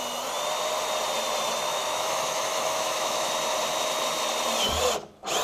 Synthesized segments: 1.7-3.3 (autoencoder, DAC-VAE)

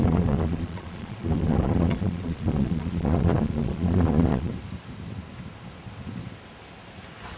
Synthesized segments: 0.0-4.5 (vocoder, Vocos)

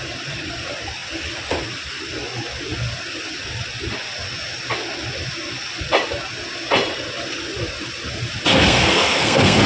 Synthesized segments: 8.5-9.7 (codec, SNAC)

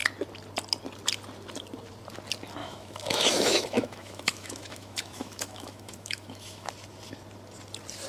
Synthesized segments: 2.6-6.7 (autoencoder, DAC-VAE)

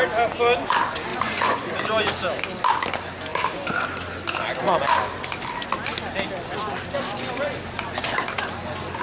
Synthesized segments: 1.1-1.8 (vocoder, Vocos)

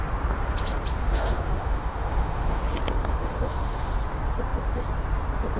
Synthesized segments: 1.0-2.6 (autoencoder, DAC-VAE); 3.0-3.9

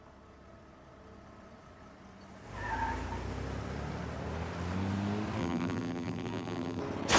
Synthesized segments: 5.4-6.8 (vocoder, BigVGAN v2)